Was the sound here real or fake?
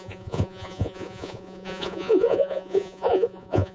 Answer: fake